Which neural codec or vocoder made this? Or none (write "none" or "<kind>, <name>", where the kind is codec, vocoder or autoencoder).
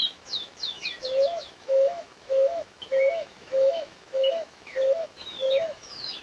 autoencoder, DAC-VAE